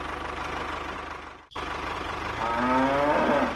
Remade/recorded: recorded